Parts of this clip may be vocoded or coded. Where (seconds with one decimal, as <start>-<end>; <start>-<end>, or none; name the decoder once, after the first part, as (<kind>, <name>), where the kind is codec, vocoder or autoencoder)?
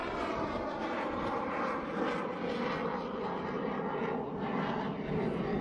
none